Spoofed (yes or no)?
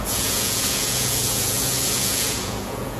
yes